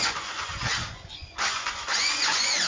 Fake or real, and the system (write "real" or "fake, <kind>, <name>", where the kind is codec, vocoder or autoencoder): fake, vocoder, Vocos